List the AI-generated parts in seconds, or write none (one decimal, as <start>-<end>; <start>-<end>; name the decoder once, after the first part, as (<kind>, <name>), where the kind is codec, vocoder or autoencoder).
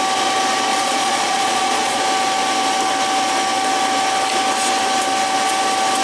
0.7-2.0 (vocoder, Vocos)